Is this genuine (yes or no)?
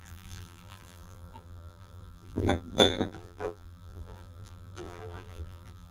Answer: no